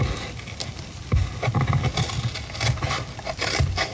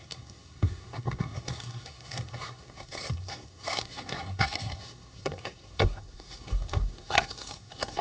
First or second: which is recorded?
first